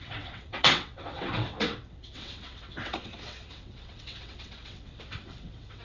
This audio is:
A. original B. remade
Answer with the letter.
B